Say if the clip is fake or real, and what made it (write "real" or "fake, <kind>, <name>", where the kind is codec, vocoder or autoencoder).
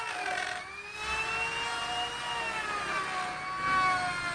real